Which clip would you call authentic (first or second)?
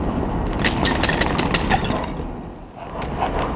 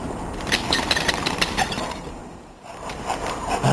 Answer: first